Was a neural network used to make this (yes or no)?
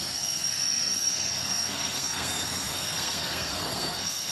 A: yes